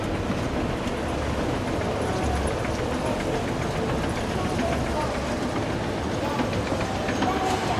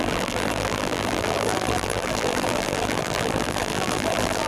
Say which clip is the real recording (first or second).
first